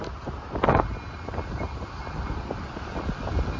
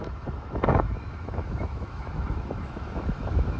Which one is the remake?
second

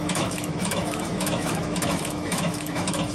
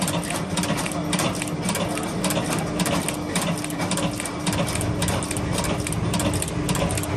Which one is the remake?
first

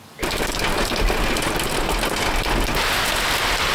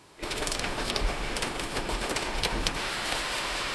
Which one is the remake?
second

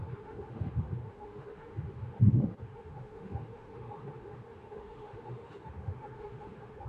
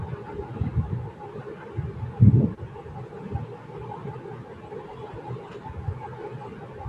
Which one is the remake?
first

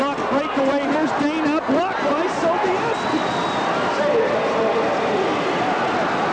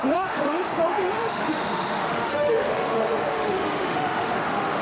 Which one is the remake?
second